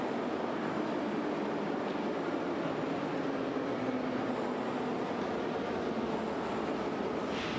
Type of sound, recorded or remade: recorded